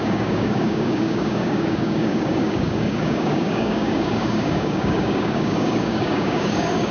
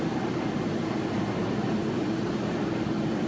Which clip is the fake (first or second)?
first